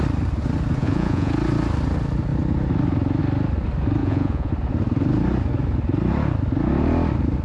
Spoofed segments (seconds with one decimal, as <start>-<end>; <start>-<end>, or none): 0.8-1.3; 4.0-4.5